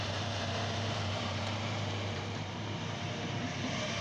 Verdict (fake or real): fake